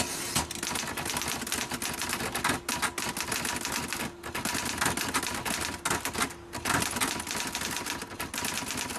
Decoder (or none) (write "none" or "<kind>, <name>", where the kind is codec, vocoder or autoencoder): none